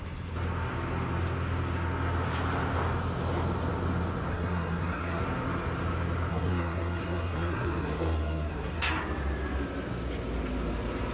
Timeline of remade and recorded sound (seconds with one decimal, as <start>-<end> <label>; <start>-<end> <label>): 0.0-4.3 recorded; 4.3-5.2 remade; 5.2-6.3 recorded; 6.3-8.9 remade; 8.9-11.1 recorded